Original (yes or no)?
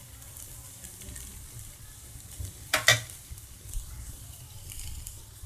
no